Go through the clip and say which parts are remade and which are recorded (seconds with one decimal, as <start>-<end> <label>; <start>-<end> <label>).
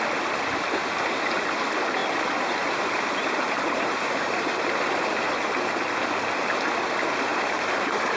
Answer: 0.0-0.8 recorded; 0.8-1.4 remade; 1.4-2.0 recorded; 2.0-5.3 remade; 5.3-7.3 recorded; 7.3-8.2 remade